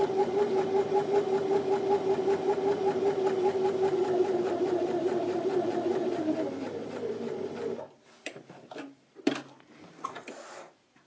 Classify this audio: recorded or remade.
remade